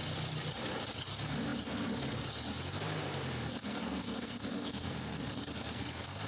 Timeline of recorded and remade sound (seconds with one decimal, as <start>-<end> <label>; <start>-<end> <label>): 0.0-3.6 recorded; 3.6-6.3 remade